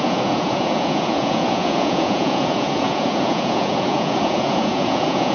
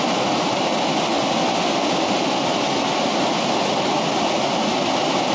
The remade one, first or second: first